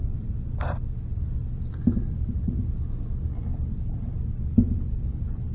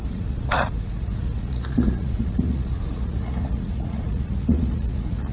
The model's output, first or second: second